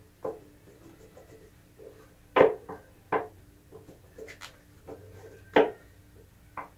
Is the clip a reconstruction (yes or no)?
no